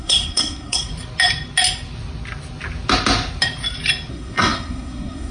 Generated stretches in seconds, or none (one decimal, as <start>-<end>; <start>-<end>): 0.0-0.9; 4.1-5.3